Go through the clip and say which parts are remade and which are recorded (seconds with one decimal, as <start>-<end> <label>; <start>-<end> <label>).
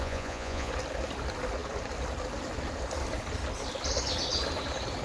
0.0-0.7 remade; 0.7-5.0 recorded